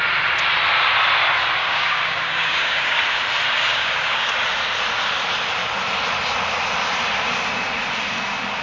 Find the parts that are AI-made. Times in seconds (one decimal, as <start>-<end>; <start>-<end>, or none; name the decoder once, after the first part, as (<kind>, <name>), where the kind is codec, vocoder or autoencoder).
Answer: 1.6-3.0 (codec, DAC); 3.7-4.3